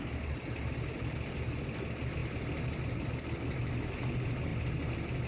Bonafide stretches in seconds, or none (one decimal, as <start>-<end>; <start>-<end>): 0.0-5.3